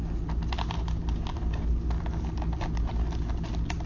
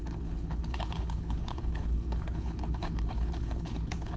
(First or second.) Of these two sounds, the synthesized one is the second